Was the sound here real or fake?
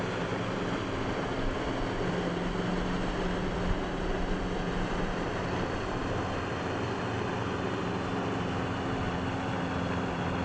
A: real